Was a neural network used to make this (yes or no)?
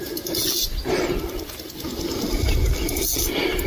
no